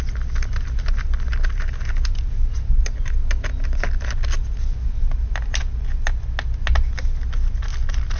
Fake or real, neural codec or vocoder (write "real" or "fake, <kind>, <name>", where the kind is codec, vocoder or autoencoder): real